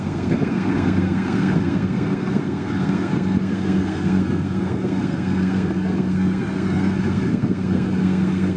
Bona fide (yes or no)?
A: no